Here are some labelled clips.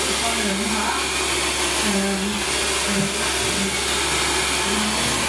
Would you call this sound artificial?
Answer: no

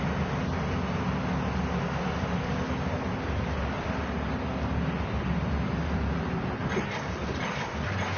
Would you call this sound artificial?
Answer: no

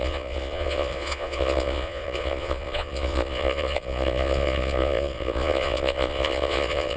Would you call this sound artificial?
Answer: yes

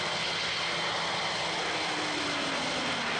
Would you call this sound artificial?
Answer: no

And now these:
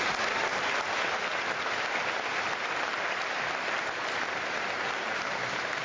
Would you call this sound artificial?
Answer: no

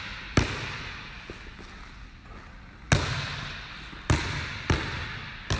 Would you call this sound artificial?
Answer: no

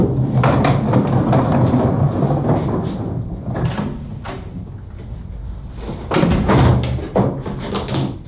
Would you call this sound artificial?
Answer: no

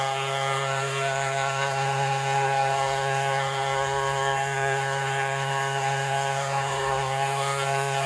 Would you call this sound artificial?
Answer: yes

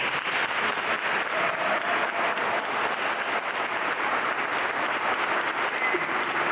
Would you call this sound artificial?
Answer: no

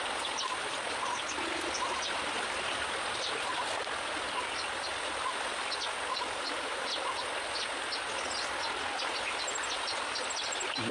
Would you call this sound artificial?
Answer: no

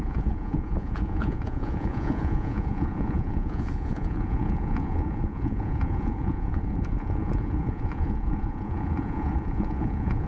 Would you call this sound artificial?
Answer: yes